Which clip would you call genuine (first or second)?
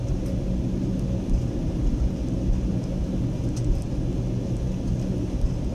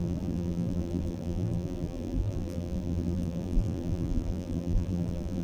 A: first